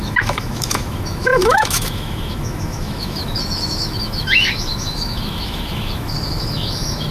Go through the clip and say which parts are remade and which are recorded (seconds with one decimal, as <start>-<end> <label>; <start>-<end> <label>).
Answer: 0.0-7.1 remade